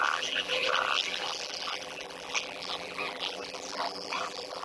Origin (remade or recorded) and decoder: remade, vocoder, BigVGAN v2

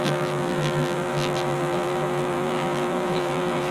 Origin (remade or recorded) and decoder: remade, vocoder, BigVGAN v2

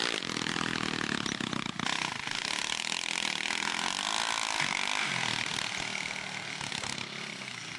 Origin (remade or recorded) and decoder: recorded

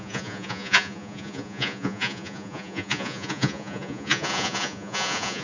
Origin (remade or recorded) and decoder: remade, vocoder, Vocos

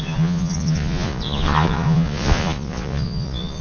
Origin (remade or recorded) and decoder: remade, vocoder, Vocos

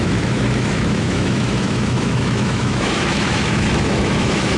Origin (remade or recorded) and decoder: remade, autoencoder, DAC-VAE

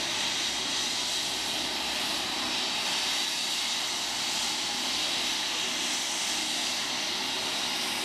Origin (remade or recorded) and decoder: recorded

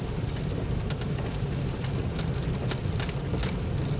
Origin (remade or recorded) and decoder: recorded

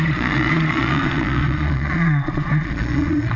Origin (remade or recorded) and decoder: remade, vocoder, Vocos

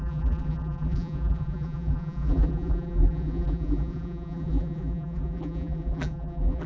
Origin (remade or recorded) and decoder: remade, vocoder, BigVGAN v2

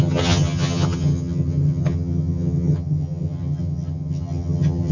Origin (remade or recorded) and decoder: remade, vocoder, HiFi-GAN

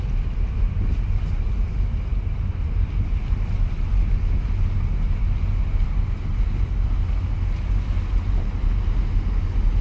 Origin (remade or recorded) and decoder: recorded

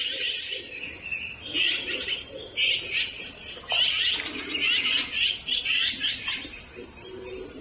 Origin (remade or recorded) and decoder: remade, vocoder, BigVGAN v2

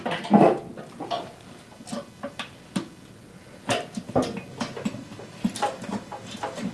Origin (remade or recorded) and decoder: recorded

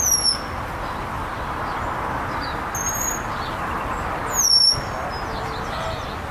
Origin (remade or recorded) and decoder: recorded